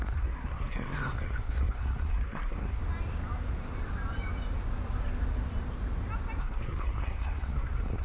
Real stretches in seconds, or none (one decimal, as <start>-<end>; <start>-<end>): 2.8-6.4

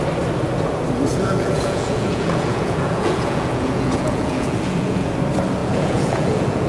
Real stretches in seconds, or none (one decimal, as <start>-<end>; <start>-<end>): 0.0-1.1; 5.1-5.6

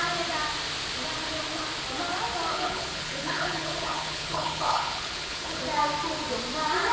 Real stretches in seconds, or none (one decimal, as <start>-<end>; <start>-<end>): 0.0-2.5; 5.6-6.9

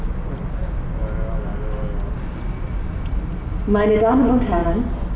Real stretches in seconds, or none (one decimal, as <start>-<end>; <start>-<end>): 0.0-5.2

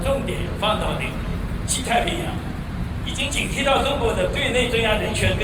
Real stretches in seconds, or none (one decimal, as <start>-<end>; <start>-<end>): 0.0-1.3; 3.3-5.4